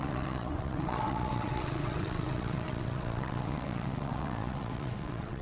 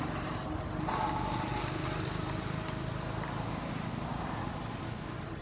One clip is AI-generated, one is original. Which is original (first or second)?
second